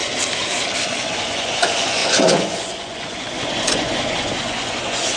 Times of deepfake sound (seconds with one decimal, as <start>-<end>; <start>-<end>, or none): 0.8-5.2